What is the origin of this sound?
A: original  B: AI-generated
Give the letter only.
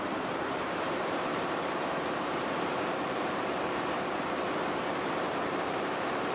B